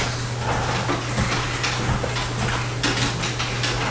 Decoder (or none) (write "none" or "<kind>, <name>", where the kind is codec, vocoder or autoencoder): none